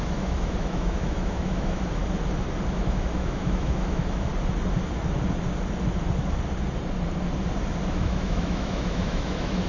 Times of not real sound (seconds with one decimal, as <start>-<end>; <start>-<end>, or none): 0.0-2.0; 2.7-4.3; 7.9-9.7